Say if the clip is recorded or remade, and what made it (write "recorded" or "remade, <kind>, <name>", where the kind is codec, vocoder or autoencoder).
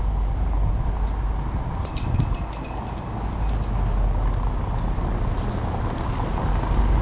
recorded